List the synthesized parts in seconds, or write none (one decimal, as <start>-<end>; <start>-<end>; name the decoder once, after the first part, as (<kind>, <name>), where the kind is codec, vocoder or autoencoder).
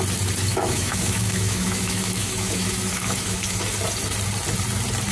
0.5-3.6 (autoencoder, DAC-VAE)